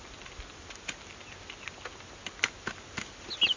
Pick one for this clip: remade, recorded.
recorded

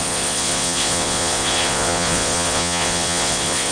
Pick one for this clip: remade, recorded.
remade